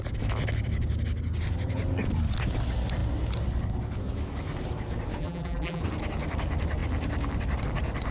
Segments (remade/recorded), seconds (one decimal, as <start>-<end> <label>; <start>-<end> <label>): 0.0-5.2 recorded; 5.2-5.8 remade; 5.8-8.1 recorded